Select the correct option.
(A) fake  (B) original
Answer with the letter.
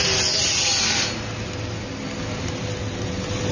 B